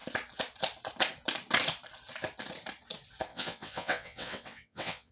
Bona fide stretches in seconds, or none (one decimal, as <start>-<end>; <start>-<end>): 0.0-3.3